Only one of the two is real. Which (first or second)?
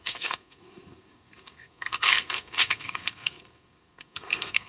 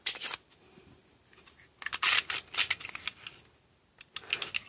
second